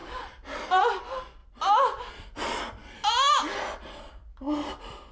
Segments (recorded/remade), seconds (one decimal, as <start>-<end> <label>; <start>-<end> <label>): 0.0-1.0 remade; 1.0-1.4 recorded; 1.4-2.1 remade; 2.1-5.1 recorded